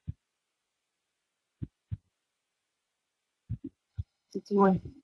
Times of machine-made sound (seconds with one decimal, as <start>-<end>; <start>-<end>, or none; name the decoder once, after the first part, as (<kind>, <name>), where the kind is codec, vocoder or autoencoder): 3.9-5.0 (codec, HILCodec)

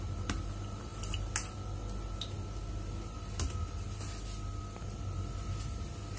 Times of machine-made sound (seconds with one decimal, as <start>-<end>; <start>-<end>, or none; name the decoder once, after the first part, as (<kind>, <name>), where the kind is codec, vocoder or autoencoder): none

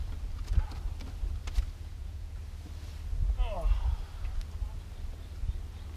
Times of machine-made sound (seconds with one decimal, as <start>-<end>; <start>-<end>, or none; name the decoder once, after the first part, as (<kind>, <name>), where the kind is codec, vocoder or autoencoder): 1.9-2.4 (vocoder, Vocos)

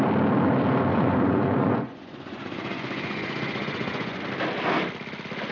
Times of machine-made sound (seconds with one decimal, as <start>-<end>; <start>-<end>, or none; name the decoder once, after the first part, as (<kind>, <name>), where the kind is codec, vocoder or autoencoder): 0.9-4.2 (vocoder, Vocos)